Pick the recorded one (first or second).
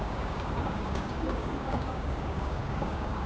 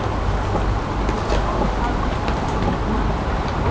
second